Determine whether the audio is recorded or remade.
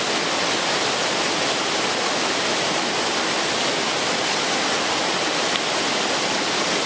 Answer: recorded